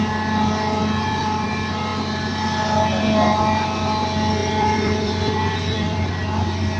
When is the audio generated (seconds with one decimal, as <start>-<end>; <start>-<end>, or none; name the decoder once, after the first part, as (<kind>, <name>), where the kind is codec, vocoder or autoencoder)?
0.8-1.5 (vocoder, BigVGAN v2); 4.4-6.1